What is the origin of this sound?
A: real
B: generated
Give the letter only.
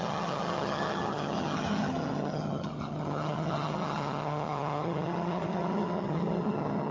B